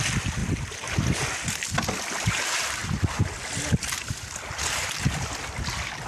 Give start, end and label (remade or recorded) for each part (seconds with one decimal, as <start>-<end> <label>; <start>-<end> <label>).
0.0-6.1 recorded